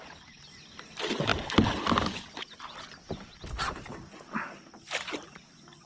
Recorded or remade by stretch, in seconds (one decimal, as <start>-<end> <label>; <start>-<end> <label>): 0.0-5.9 recorded